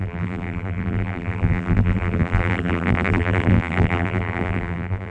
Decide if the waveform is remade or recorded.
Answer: remade